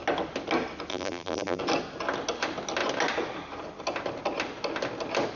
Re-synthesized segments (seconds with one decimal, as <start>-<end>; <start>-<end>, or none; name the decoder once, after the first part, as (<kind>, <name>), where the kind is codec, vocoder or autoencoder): 0.9-1.6 (vocoder, BigVGAN v2)